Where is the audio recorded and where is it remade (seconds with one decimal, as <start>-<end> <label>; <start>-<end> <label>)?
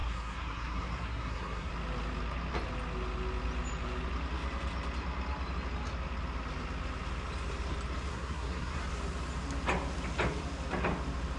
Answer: 0.0-1.7 remade; 1.7-8.1 recorded; 8.1-8.8 remade; 8.8-11.4 recorded